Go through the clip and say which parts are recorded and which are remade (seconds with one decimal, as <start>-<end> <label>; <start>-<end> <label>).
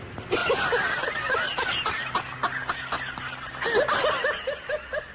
0.0-5.1 recorded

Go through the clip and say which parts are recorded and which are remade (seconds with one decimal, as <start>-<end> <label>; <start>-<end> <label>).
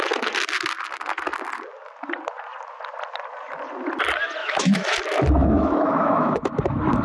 0.0-4.4 recorded; 4.4-5.0 remade; 5.0-5.4 recorded; 5.4-6.5 remade; 6.5-7.0 recorded